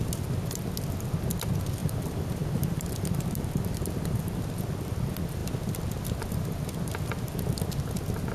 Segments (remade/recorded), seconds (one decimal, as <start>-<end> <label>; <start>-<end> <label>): 0.0-1.8 recorded; 1.8-4.2 remade; 4.2-8.3 recorded